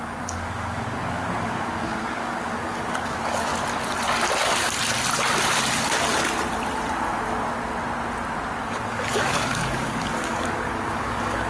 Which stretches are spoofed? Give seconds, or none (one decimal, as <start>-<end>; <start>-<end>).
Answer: 0.0-3.5; 8.6-11.5